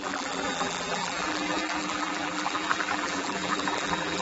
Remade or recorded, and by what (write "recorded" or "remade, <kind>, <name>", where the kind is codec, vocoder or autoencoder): remade, vocoder, BigVGAN v2